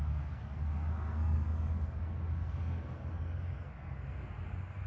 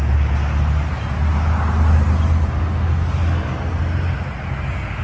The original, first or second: second